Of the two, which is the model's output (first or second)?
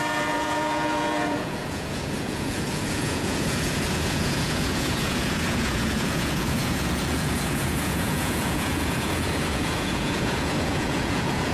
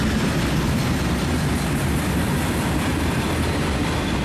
first